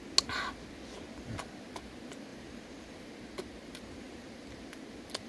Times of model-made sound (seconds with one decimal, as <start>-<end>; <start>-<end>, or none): none